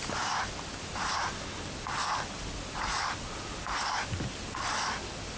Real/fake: real